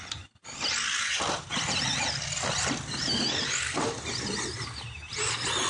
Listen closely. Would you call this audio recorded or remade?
recorded